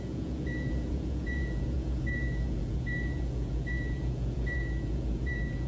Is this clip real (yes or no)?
no